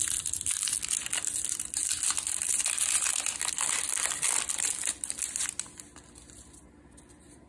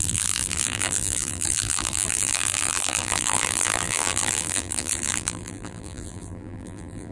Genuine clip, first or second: first